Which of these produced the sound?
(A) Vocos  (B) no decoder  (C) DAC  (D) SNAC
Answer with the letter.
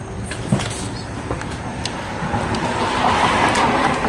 B